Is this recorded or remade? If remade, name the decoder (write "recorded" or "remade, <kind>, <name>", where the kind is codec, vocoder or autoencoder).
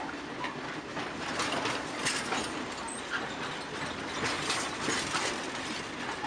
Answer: recorded